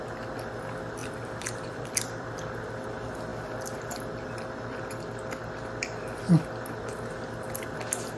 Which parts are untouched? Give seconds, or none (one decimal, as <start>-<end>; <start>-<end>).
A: 0.0-1.0; 2.5-8.2